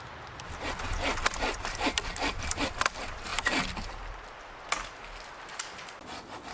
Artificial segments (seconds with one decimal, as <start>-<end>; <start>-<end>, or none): 1.1-2.6